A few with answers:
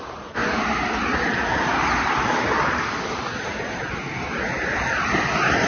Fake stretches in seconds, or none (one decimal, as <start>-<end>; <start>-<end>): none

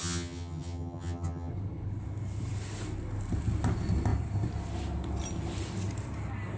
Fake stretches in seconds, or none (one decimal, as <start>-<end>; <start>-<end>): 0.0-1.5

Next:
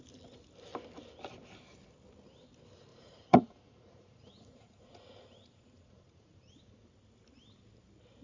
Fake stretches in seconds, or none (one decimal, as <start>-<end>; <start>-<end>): 2.9-6.3